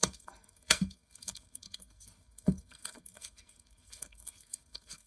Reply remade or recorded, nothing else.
remade